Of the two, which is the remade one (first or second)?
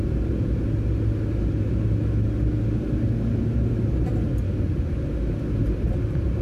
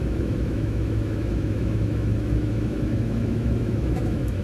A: second